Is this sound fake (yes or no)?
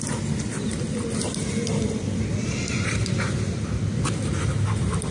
no